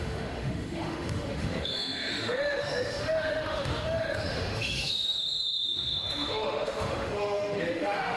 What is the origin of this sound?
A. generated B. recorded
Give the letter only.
A